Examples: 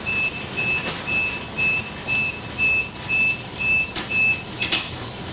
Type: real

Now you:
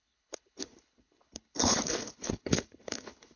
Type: fake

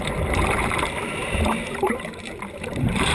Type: fake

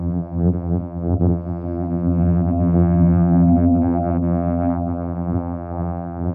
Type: fake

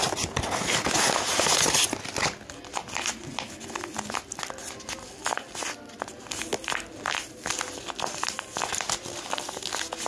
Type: real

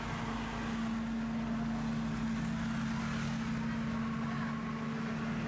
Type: real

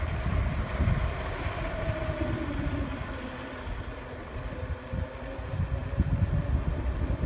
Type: real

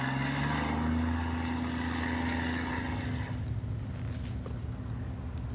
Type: real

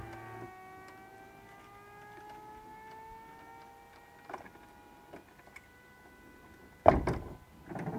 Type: real